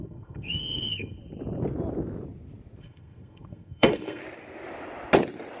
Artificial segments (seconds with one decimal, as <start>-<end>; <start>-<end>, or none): 0.0-1.2; 2.8-4.2